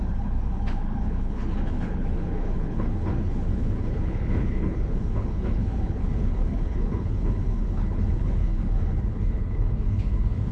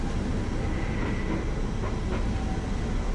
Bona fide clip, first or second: second